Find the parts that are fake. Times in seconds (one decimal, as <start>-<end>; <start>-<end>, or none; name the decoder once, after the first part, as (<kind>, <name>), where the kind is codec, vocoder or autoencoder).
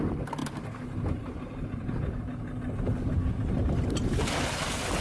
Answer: none